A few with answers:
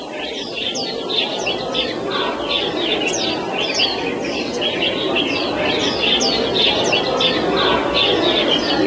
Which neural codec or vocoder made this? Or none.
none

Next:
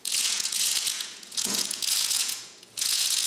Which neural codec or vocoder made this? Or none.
vocoder, Vocos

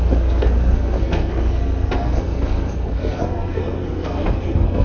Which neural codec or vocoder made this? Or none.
codec, SNAC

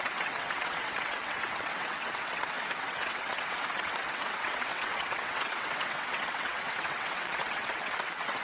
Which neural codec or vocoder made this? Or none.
vocoder, WaveNeXt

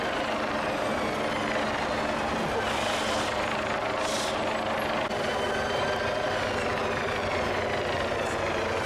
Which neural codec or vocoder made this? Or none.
none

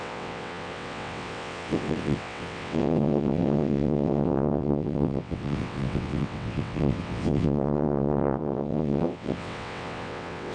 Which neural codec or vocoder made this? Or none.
vocoder, WaveNeXt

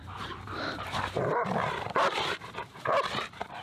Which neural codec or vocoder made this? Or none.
vocoder, BigVGAN v2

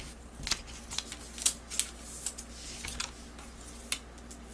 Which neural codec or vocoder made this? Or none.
none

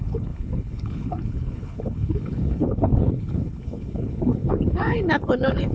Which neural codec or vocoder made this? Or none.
codec, HILCodec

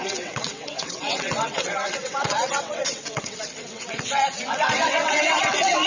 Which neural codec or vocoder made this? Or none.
vocoder, WaveNeXt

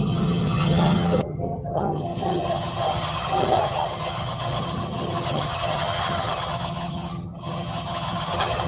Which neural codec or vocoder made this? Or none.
vocoder, HiFi-GAN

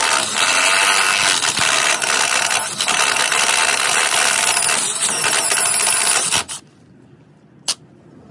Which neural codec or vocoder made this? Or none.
none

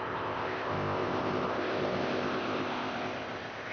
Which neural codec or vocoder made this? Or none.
codec, ZipCodec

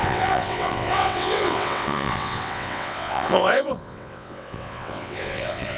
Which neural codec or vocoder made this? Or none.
vocoder, WaveNeXt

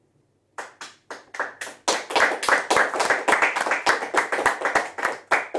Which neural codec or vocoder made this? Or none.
none